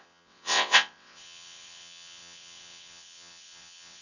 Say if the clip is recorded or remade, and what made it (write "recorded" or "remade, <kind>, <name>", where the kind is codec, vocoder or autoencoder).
remade, vocoder, WaveNeXt